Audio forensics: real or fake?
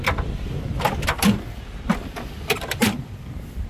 real